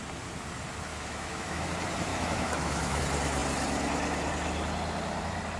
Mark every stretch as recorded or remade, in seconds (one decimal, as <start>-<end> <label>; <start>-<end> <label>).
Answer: 0.0-0.9 recorded; 0.9-1.7 remade; 1.7-2.1 recorded; 2.1-3.0 remade; 3.0-5.6 recorded